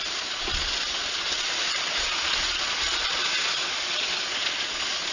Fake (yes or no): yes